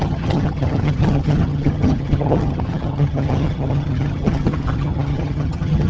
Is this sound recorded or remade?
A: remade